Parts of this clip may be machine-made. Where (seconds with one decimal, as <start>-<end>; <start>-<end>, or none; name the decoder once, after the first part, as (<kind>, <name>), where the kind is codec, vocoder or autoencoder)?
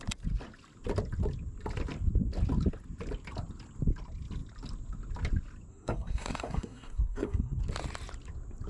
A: 5.7-7.6 (codec, SNAC)